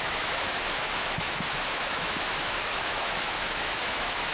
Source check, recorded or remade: remade